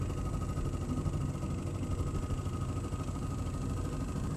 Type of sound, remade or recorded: recorded